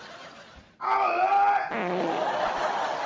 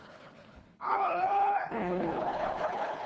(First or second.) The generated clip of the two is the second